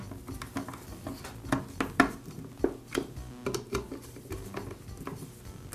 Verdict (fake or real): real